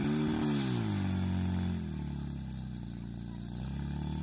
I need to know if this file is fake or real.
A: real